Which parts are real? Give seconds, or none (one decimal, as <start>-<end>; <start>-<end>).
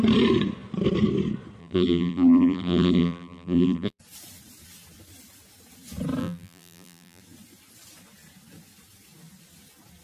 0.0-1.6; 4.0-6.2; 7.2-10.0